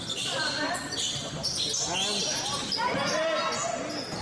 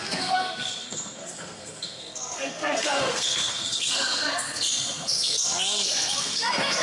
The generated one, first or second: second